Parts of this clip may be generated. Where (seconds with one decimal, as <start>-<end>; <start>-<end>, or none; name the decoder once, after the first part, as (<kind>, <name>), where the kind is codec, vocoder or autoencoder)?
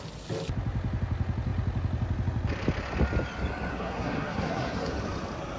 3.7-4.9 (codec, SNAC)